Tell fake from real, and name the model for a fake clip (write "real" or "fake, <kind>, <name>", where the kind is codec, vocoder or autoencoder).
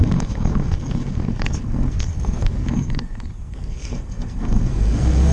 fake, codec, SNAC